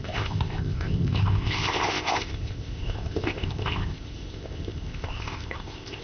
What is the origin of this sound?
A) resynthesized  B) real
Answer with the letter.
A